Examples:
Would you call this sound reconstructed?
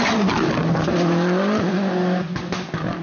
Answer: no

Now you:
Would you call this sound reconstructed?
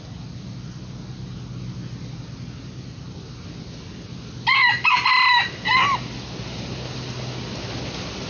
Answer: no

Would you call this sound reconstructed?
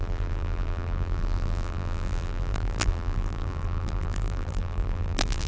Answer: yes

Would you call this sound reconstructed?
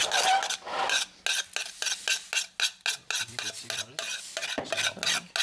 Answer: no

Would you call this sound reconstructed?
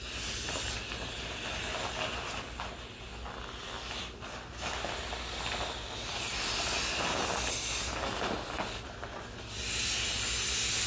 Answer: no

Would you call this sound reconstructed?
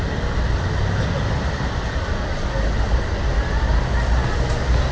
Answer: no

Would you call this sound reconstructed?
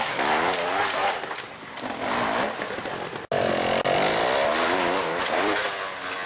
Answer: no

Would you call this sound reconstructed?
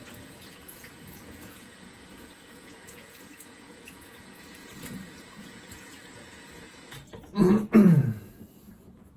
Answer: yes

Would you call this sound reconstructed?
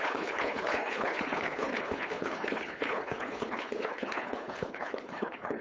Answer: yes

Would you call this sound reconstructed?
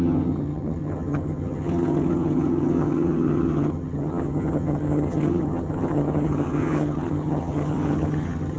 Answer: yes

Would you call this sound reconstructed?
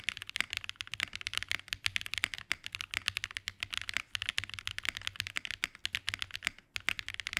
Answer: no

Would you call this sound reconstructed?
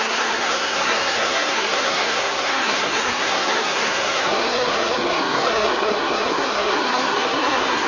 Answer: yes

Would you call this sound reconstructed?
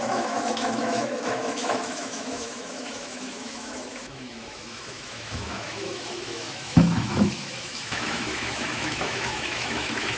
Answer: yes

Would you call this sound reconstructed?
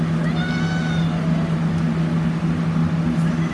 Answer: no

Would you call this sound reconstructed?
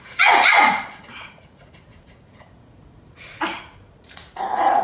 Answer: yes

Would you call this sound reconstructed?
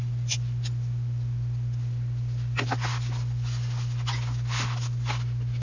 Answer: no